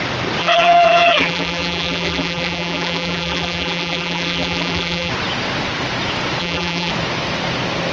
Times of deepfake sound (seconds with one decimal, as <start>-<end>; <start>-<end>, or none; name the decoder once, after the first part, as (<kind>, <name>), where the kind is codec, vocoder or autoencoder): 0.4-5.1 (vocoder, BigVGAN v2); 6.4-6.9